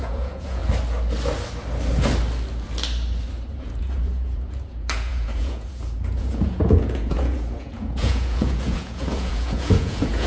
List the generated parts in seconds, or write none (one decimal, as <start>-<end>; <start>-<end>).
0.0-0.6; 3.5-10.3